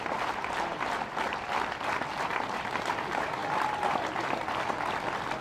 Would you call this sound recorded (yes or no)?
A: yes